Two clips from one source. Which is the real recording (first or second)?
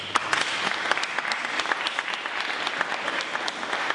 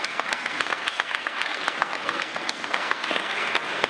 first